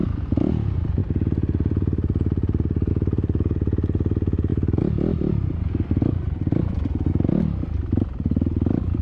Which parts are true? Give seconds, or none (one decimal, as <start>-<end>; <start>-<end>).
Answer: 0.0-9.0